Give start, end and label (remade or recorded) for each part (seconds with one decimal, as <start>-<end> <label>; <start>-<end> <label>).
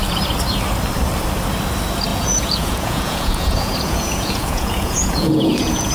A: 0.0-2.1 recorded; 2.1-5.9 remade